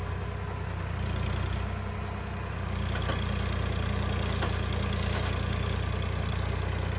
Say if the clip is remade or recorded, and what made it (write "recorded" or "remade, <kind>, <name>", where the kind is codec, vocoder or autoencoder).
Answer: recorded